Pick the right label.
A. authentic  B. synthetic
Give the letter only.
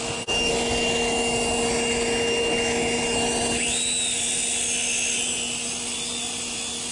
A